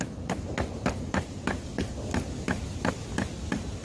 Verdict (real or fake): real